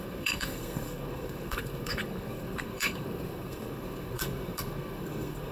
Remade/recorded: remade